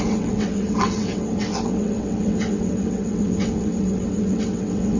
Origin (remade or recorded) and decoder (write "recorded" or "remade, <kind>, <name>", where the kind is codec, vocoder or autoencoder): remade, vocoder, WaveNeXt